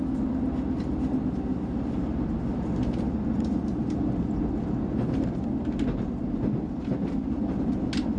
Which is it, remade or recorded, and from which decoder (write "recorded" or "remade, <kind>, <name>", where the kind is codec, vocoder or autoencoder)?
recorded